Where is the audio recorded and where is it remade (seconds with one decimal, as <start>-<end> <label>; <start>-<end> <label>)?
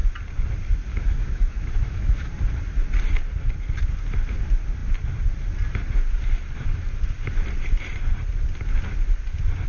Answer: 0.0-0.9 recorded; 0.9-2.3 remade; 2.3-9.7 recorded